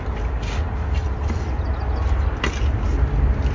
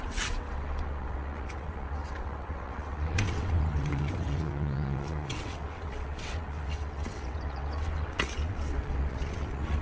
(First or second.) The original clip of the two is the first